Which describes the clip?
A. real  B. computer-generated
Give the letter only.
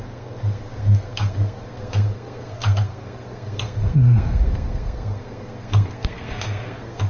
B